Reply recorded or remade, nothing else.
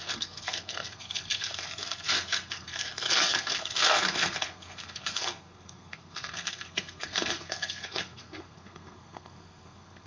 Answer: remade